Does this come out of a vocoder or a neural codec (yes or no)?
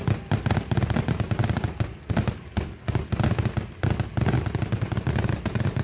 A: no